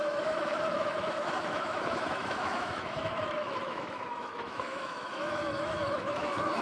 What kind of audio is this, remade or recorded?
remade